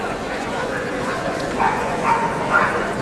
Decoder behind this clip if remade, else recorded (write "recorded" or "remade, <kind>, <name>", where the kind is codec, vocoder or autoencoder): remade, vocoder, Vocos